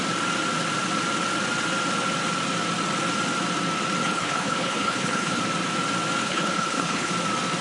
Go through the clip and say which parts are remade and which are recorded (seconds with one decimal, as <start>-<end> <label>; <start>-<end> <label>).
0.0-4.0 recorded; 4.0-5.4 remade; 5.4-6.2 recorded; 6.2-7.1 remade; 7.1-7.6 recorded